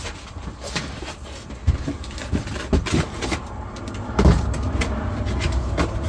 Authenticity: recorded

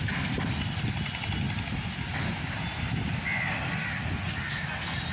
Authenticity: recorded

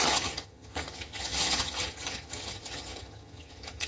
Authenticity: remade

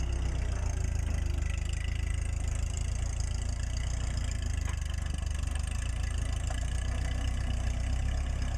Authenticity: recorded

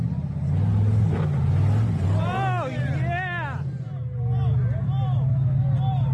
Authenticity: recorded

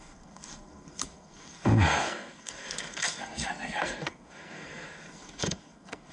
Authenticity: remade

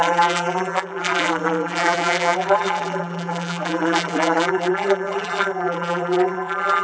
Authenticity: remade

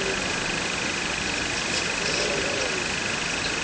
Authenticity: recorded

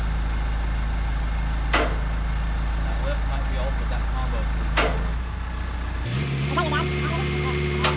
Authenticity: recorded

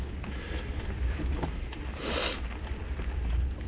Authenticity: recorded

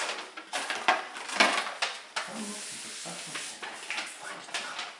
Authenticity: recorded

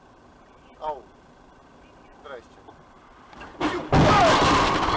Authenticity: recorded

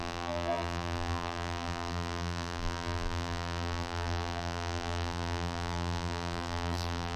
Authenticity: remade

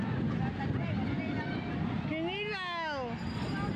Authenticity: recorded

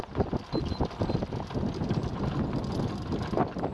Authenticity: recorded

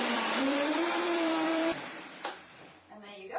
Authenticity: remade